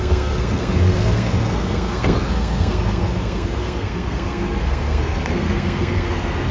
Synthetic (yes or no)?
yes